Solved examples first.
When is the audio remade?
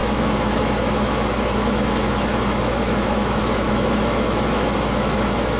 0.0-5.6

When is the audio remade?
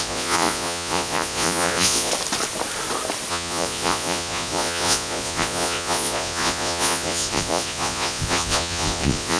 0.0-2.1; 3.3-9.4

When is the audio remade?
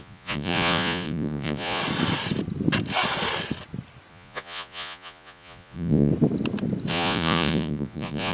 0.0-1.8; 4.1-6.1; 6.9-8.3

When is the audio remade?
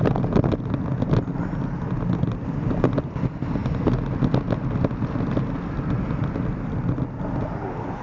none